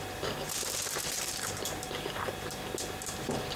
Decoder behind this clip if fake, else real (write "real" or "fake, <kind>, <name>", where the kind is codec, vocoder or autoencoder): fake, vocoder, BigVGAN v2